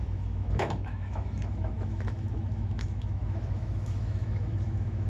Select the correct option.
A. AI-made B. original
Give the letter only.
A